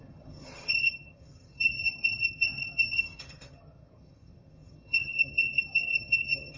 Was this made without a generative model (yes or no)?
no